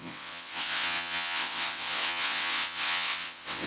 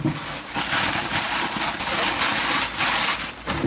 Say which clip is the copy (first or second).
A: first